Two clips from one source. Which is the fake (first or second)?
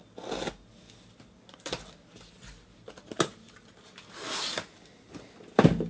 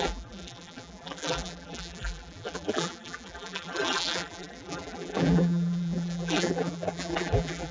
second